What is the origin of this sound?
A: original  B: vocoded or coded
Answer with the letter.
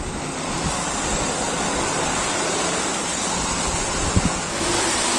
A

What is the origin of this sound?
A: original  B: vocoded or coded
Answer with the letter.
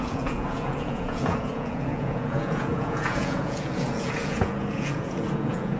B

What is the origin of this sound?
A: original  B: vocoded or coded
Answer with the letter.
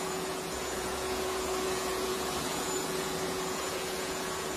B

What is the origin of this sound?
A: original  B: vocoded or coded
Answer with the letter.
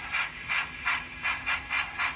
A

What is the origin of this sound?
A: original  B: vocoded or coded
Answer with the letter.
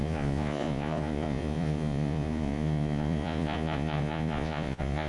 B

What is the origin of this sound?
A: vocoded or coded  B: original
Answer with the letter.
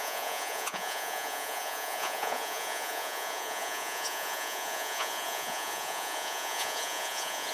A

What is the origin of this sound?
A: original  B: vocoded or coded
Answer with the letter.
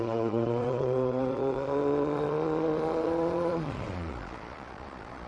B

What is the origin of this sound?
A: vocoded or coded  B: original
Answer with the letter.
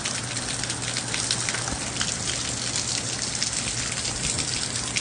B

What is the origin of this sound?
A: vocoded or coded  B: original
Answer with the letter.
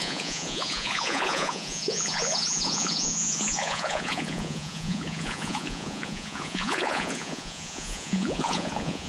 A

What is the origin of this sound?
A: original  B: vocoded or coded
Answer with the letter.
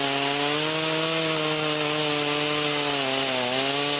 A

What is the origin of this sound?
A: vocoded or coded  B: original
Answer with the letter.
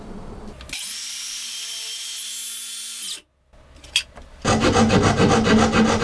B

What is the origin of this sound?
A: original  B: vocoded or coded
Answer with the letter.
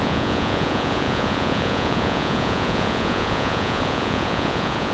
B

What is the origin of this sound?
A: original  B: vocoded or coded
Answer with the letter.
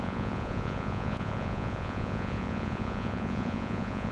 B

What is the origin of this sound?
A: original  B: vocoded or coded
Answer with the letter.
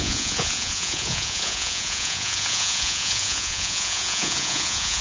B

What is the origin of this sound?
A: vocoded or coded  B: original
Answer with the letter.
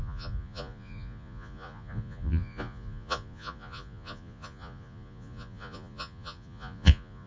A